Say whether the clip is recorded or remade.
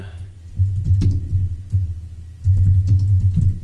recorded